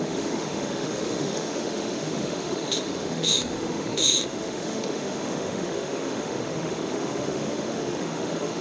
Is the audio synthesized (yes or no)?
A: yes